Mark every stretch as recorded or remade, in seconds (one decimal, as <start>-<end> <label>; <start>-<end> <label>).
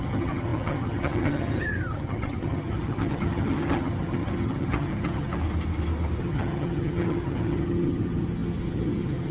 0.0-5.4 remade; 5.4-6.2 recorded; 6.2-9.3 remade